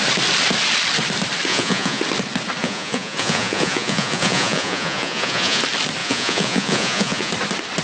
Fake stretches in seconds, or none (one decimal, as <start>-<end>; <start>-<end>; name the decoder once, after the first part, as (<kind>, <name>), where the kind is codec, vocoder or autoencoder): 1.5-2.0 (vocoder, Vocos); 2.6-5.6; 6.0-7.3